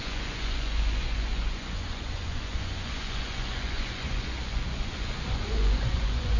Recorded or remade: remade